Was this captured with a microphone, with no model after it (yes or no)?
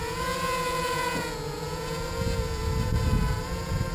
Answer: no